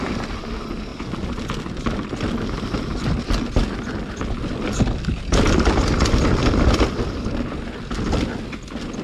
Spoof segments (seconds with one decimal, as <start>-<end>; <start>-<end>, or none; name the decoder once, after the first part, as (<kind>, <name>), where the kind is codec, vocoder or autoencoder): none